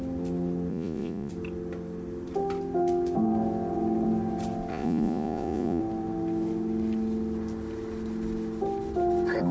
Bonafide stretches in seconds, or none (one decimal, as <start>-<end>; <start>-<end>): 0.0-0.7; 1.3-4.7; 5.8-9.5